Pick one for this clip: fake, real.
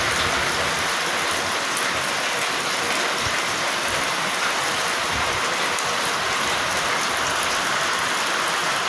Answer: real